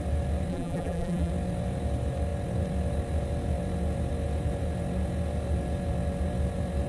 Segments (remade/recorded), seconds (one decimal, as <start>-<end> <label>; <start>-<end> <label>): 0.0-0.5 recorded; 0.5-1.3 remade; 1.3-6.9 recorded